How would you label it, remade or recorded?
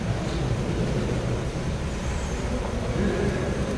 recorded